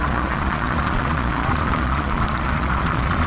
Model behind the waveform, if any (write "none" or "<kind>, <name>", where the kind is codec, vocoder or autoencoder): vocoder, Vocos